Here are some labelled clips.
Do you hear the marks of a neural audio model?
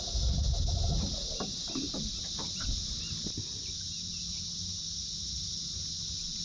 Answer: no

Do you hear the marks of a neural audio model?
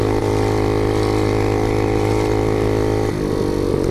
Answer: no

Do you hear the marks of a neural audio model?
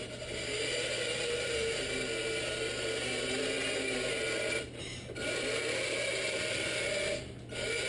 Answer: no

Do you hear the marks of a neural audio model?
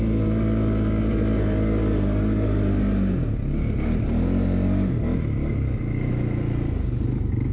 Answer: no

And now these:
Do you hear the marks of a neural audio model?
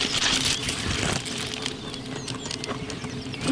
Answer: no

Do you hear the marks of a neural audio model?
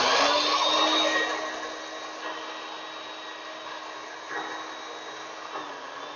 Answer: no